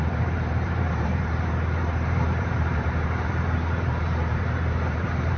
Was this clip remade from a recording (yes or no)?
yes